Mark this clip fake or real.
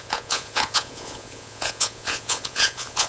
fake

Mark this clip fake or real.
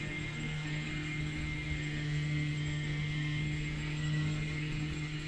fake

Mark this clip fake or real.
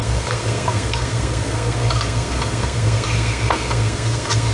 fake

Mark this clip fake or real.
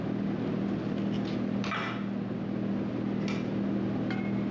real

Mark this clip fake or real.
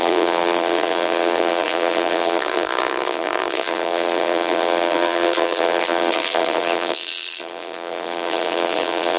fake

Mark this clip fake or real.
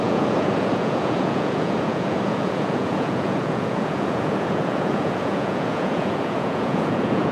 fake